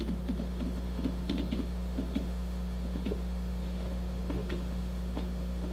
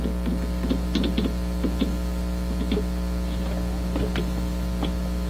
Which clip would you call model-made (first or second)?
first